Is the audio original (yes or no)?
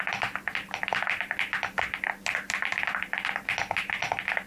yes